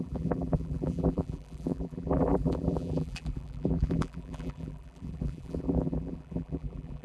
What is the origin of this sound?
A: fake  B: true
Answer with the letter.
A